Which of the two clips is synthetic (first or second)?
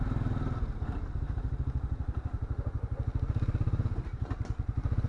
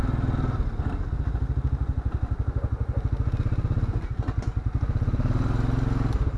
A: first